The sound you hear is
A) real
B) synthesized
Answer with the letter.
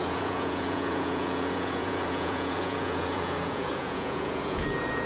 B